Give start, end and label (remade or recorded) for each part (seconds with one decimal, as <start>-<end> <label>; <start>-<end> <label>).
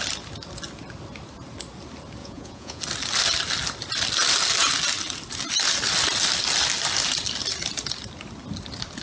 0.0-2.2 recorded; 2.2-2.8 remade; 2.8-9.0 recorded